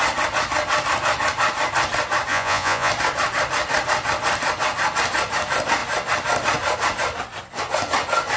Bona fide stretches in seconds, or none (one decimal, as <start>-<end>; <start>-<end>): 0.0-2.3; 2.9-8.4